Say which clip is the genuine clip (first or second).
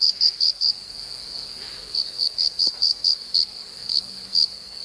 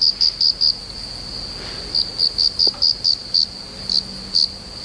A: second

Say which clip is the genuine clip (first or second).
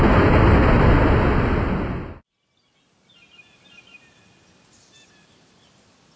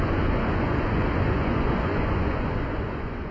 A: first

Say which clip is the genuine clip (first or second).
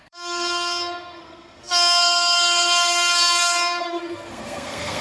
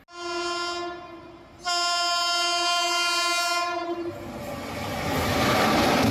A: second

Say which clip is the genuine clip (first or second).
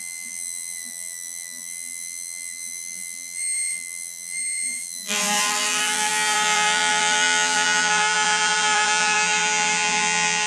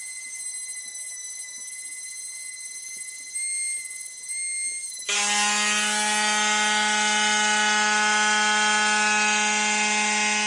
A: second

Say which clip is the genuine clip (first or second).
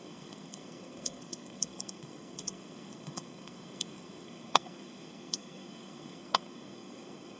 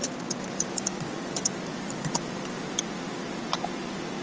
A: second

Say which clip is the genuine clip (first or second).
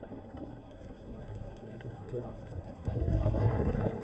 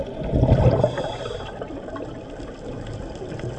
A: second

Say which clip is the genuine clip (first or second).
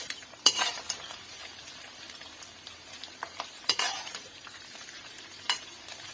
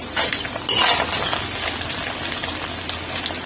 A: second